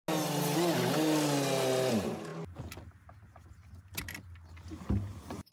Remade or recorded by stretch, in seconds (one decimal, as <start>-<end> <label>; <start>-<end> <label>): 0.0-5.5 recorded